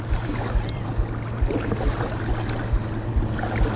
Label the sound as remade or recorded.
recorded